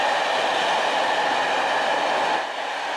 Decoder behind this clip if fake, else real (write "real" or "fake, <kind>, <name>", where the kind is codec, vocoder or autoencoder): real